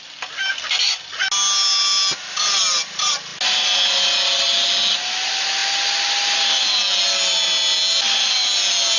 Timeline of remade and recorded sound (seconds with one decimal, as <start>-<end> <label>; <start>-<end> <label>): 0.0-9.0 recorded